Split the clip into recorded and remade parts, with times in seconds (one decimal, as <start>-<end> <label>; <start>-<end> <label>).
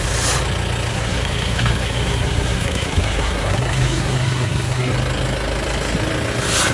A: 0.0-0.9 recorded; 0.9-4.9 remade; 4.9-6.7 recorded